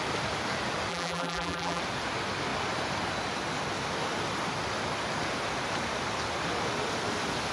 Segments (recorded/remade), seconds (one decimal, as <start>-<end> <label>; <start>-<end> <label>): 0.0-0.9 recorded; 0.9-1.8 remade; 1.8-7.5 recorded